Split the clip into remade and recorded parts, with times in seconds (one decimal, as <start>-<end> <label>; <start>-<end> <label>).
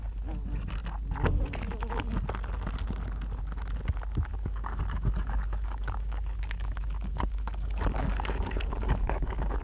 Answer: 0.0-4.3 recorded; 4.3-9.6 remade